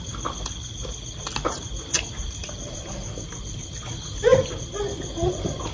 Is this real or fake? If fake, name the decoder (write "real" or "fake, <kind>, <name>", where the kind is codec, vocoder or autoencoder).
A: real